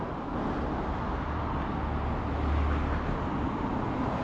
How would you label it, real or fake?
real